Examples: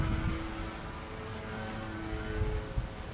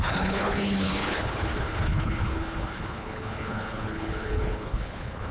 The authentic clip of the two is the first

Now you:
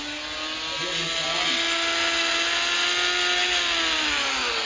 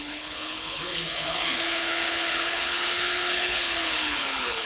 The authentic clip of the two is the first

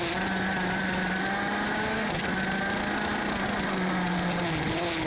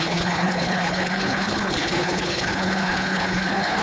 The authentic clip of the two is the first